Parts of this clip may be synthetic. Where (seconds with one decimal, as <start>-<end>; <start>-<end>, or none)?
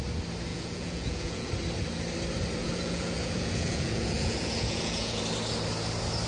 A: 0.5-1.5; 2.6-5.2